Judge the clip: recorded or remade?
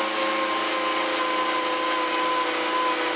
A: recorded